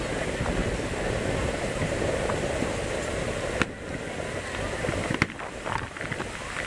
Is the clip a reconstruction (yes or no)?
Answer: no